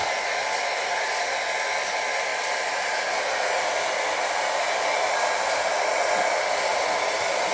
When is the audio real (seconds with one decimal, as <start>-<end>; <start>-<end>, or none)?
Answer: 0.0-2.3; 3.9-7.5